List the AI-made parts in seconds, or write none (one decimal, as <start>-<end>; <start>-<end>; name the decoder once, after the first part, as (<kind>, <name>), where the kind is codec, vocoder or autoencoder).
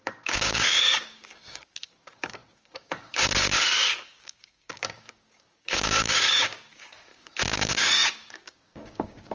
0.0-9.3 (codec, DAC)